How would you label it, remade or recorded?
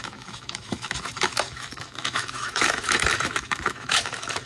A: remade